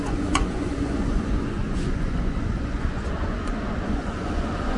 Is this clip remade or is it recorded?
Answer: remade